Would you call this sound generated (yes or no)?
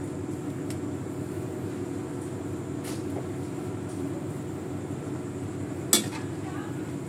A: no